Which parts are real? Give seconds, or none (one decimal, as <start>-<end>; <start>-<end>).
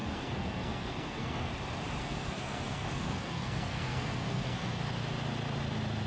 1.5-2.0; 4.8-6.1